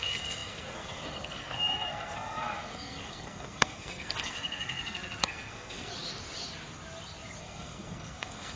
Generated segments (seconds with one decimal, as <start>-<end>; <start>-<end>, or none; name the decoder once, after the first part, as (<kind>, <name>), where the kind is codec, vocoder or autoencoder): 0.0-5.9 (codec, SNAC); 7.4-8.6